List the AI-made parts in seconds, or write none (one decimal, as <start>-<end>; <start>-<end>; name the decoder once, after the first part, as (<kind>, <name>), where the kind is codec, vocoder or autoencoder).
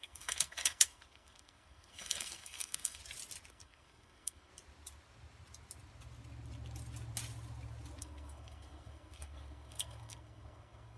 0.0-3.0 (codec, SNAC); 3.5-4.5; 8.0-11.0